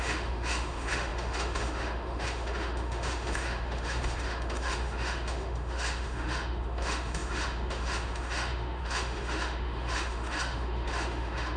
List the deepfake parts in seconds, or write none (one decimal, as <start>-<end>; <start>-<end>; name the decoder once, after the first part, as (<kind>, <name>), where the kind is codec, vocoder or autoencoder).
0.0-11.6 (autoencoder, DAC-VAE)